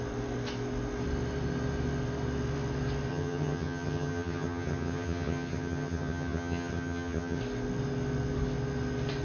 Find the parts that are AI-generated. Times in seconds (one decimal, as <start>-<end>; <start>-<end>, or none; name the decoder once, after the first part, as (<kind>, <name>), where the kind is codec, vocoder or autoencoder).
3.1-7.4 (vocoder, HiFi-GAN)